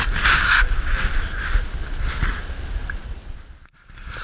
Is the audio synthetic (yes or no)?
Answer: no